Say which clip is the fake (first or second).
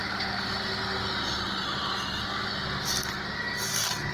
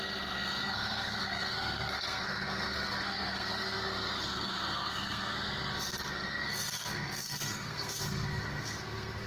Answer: second